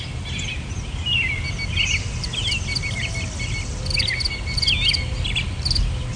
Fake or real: real